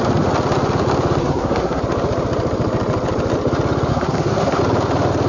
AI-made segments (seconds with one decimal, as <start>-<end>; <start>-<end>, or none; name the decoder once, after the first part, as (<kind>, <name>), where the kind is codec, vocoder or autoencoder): 1.2-1.8 (codec, SNAC); 3.9-4.6